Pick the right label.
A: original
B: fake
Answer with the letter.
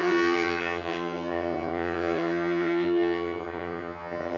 B